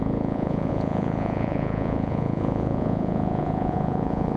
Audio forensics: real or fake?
fake